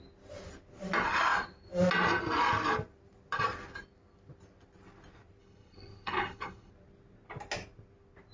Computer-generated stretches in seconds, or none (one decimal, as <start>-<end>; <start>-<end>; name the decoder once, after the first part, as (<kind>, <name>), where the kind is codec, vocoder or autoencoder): 5.4-6.7 (codec, HILCodec)